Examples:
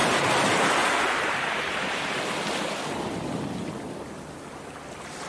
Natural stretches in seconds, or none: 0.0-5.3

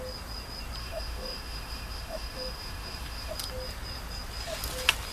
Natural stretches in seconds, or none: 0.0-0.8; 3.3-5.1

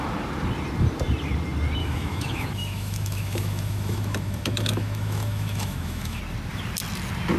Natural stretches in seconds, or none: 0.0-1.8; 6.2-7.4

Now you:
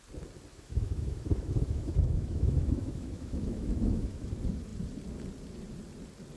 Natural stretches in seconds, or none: 0.0-0.5; 4.3-6.4